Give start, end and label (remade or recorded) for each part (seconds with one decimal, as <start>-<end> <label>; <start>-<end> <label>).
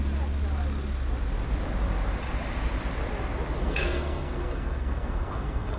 0.0-3.6 recorded; 3.6-5.8 remade